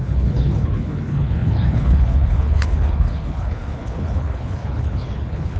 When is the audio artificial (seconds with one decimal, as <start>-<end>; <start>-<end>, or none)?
0.0-5.6

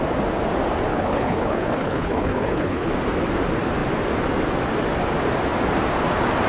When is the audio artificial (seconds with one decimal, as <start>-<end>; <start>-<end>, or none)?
0.9-2.9

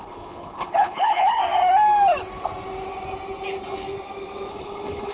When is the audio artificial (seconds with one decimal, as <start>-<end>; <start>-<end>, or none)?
0.0-1.4; 4.5-5.1

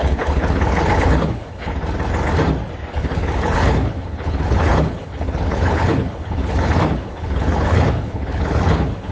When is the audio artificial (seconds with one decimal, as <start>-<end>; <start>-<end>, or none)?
0.0-1.7; 2.9-9.1

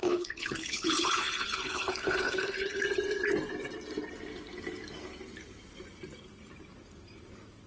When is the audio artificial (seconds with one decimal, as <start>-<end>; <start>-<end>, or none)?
0.0-2.8

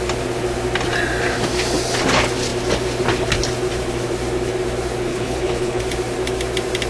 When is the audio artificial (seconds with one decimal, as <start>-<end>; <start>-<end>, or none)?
5.1-5.8